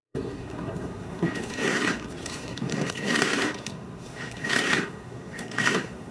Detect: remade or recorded remade